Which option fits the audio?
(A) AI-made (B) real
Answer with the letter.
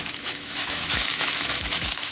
A